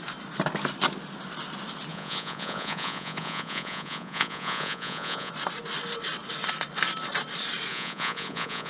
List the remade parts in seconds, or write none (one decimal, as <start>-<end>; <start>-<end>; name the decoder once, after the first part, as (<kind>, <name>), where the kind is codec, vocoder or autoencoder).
1.9-5.3 (vocoder, Vocos); 7.7-8.7

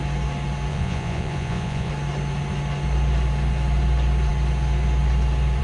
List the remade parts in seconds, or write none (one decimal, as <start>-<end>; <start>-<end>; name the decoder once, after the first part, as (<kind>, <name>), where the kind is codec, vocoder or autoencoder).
0.7-1.9 (vocoder, Vocos)

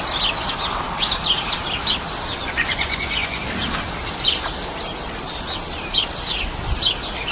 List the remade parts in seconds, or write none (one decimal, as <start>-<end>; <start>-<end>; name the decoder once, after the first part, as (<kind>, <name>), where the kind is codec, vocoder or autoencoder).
2.3-3.4 (vocoder, Vocos)

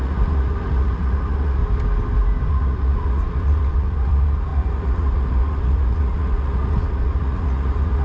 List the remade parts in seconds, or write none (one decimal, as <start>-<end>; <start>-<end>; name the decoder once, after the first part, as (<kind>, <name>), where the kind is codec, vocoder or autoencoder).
0.0-1.6 (vocoder, Vocos); 2.5-8.0

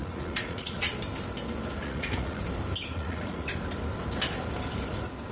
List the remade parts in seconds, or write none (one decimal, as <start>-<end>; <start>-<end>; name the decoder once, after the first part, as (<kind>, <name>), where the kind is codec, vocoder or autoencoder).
0.0-0.9 (vocoder, Vocos); 1.8-2.4; 2.9-3.5